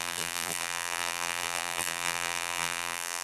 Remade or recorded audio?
remade